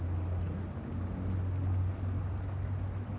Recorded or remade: recorded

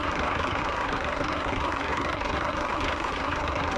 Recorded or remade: remade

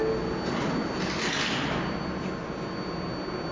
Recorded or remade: recorded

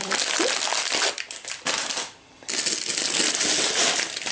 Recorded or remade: recorded